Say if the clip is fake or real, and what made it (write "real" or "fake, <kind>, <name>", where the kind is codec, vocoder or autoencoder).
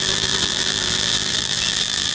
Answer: fake, vocoder, BigVGAN v2